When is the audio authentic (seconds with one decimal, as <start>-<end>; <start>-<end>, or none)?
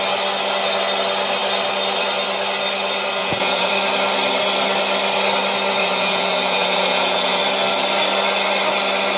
0.0-3.2; 3.7-5.8; 7.4-9.2